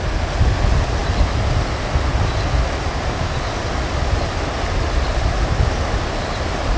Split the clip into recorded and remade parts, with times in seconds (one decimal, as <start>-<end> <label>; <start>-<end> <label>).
0.0-6.8 recorded